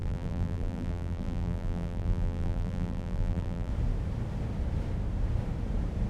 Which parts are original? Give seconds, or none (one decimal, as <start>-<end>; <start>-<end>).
3.7-6.1